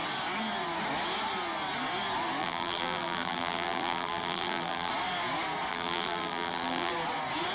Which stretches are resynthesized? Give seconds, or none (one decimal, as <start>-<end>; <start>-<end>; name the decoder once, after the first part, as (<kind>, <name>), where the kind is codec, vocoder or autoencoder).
2.4-4.9 (vocoder, BigVGAN v2); 5.7-6.9